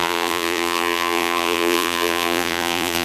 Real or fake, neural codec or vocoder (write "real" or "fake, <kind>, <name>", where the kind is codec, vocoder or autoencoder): fake, vocoder, BigVGAN v2